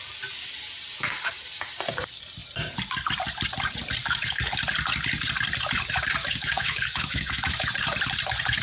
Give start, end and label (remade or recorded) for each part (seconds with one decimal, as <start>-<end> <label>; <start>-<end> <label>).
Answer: 0.0-4.0 recorded; 4.0-4.5 remade; 4.5-6.2 recorded; 6.2-7.7 remade; 7.7-8.6 recorded